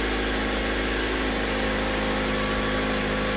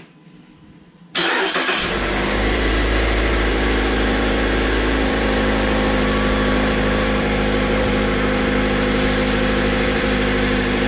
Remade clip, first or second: second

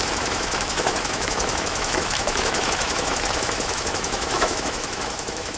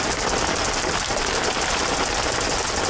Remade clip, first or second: first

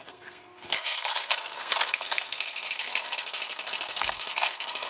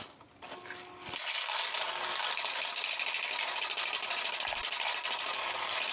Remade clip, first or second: first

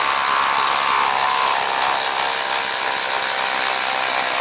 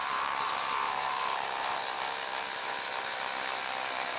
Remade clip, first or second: second